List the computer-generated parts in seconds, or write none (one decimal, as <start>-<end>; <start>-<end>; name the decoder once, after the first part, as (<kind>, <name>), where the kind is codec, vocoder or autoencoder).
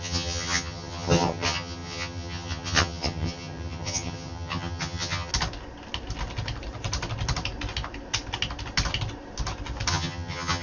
0.0-5.3 (vocoder, HiFi-GAN); 9.9-10.6